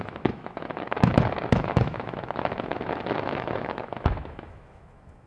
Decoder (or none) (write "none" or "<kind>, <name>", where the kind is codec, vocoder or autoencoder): autoencoder, DAC-VAE